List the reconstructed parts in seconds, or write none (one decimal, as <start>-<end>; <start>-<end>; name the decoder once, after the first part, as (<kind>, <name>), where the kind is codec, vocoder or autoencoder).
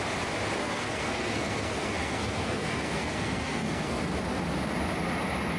0.6-4.0 (codec, SNAC)